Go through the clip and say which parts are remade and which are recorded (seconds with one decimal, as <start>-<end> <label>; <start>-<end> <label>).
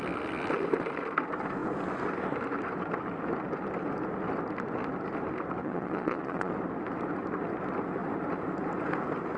0.0-5.6 recorded; 5.6-6.5 remade; 6.5-9.4 recorded